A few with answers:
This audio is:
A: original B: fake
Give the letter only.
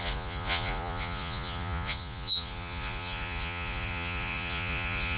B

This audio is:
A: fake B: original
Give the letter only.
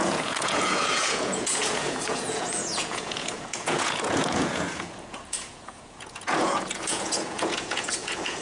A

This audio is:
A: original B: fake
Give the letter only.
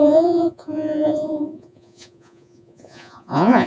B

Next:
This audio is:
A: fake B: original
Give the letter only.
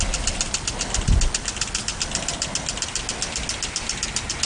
B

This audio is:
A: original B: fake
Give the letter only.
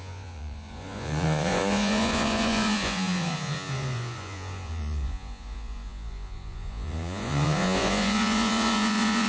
B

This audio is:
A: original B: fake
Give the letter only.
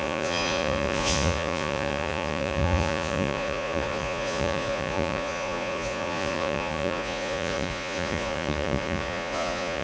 B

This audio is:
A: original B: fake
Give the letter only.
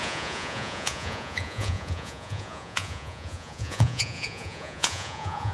B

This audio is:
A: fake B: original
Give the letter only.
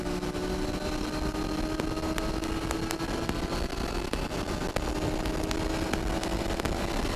B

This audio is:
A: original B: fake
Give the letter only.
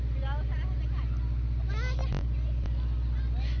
A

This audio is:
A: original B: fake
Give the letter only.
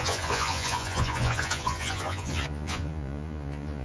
B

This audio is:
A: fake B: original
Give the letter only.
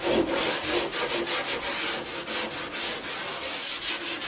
B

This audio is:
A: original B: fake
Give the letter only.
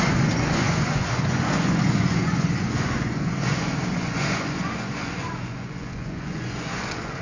B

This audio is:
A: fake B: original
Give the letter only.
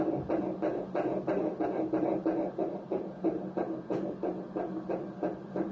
B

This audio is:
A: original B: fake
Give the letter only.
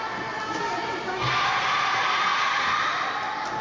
A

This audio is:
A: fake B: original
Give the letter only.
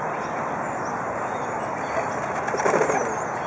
B